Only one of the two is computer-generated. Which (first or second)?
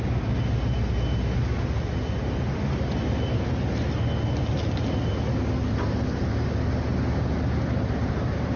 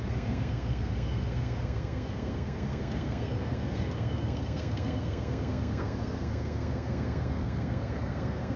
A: second